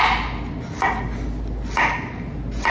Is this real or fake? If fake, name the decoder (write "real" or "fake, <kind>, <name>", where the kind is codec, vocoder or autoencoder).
real